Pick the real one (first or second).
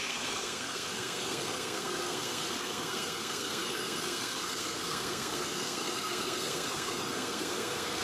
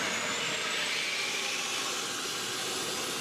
second